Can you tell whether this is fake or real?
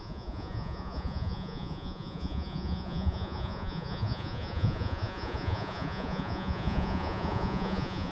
fake